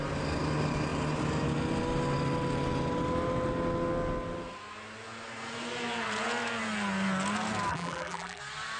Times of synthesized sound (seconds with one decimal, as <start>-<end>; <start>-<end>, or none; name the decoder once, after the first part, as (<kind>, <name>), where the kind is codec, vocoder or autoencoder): 7.7-8.4 (vocoder, BigVGAN v2)